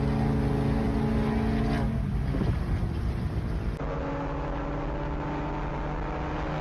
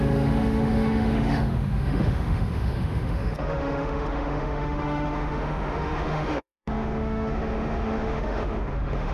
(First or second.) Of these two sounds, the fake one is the second